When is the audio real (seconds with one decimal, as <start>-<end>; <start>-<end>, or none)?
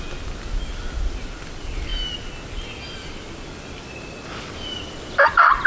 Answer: 0.0-5.7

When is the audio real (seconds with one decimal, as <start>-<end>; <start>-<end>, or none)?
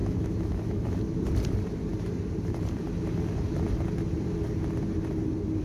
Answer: 1.2-5.6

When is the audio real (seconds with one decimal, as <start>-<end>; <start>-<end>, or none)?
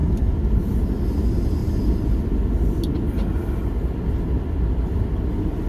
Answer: 0.0-5.7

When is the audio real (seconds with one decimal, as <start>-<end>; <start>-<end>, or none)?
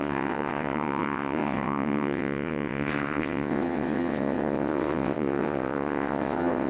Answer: none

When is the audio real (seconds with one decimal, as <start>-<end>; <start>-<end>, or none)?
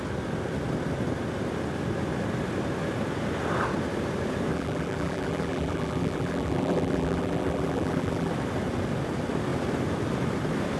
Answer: 0.0-4.5; 8.3-10.8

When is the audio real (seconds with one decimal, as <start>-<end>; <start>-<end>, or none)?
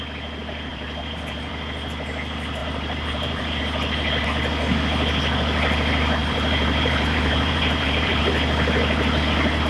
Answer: 0.0-0.7; 1.5-2.6; 3.6-6.2; 8.2-9.7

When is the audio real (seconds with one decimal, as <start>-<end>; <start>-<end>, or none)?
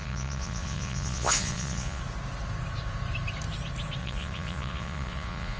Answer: 2.0-4.0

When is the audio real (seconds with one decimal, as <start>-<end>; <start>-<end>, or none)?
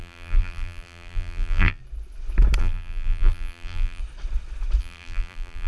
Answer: 1.8-2.6; 4.0-4.8